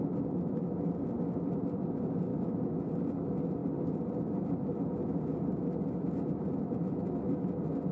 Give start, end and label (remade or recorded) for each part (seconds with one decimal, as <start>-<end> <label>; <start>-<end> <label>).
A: 0.0-2.3 recorded; 2.3-2.9 remade; 2.9-7.9 recorded